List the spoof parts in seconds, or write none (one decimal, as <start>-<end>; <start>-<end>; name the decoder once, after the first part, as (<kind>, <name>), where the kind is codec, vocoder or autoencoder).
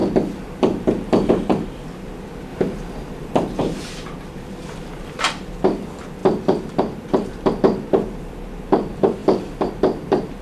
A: 0.0-2.5 (vocoder, BigVGAN v2); 3.6-10.4